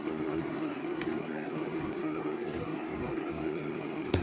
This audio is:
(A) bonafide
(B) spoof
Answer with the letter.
B